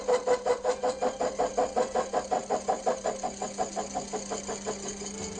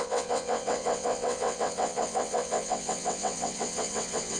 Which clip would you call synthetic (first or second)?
second